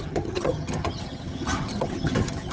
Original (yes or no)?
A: no